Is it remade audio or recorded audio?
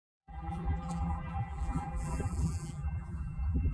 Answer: remade